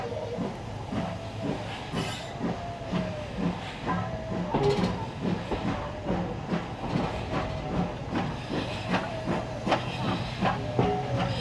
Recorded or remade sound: recorded